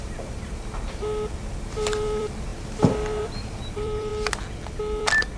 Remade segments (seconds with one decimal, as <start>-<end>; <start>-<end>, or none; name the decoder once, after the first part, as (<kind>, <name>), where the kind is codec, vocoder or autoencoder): 0.0-4.1 (vocoder, BigVGAN v2); 4.8-5.4